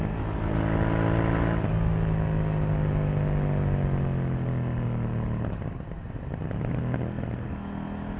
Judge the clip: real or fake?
real